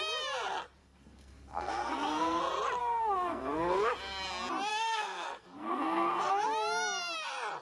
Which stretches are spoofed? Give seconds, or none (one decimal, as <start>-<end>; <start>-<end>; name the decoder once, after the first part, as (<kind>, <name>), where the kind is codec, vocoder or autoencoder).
0.8-2.4 (codec, SNAC); 2.8-3.9; 4.7-6.3